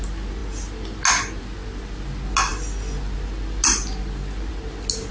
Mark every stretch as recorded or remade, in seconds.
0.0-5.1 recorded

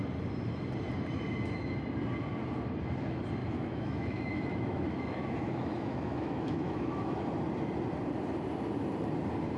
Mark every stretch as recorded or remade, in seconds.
0.0-3.4 recorded; 3.4-7.2 remade; 7.2-9.6 recorded

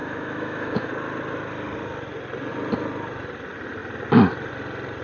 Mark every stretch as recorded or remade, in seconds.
0.0-0.9 remade; 0.9-5.0 recorded

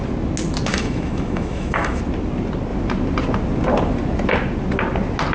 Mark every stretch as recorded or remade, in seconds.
0.0-0.7 recorded; 0.7-2.0 remade; 2.0-5.3 recorded

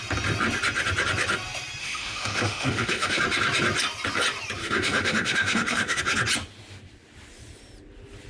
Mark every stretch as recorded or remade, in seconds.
0.0-1.8 recorded; 1.8-3.2 remade; 3.2-4.6 recorded; 4.6-6.0 remade; 6.0-8.3 recorded